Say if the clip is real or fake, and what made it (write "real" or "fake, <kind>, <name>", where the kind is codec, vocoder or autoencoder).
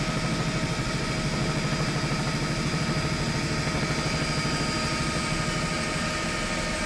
real